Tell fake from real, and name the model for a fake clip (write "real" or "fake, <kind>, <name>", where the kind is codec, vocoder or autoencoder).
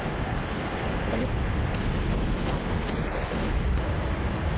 real